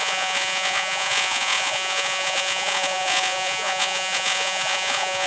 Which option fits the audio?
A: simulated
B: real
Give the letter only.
A